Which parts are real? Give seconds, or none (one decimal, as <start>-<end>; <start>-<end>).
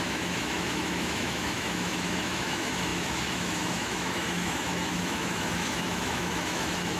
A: none